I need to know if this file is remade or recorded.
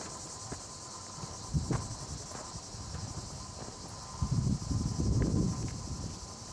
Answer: recorded